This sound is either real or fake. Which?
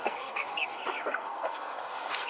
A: fake